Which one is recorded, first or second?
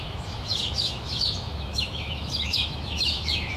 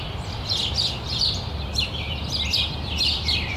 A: second